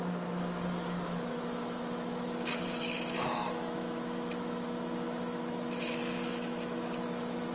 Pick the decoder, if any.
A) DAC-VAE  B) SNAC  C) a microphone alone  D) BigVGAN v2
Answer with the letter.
A